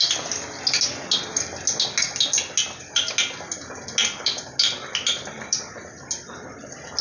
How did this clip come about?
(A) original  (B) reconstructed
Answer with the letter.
A